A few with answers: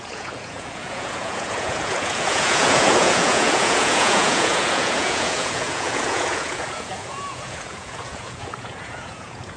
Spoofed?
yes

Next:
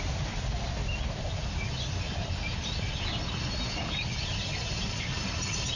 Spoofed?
no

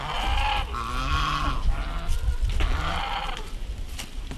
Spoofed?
no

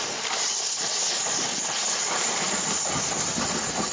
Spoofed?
no